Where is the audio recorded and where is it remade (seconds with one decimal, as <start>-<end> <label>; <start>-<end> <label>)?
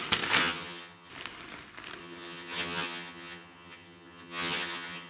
0.0-0.4 recorded; 0.4-1.1 remade; 1.1-2.0 recorded; 2.0-5.1 remade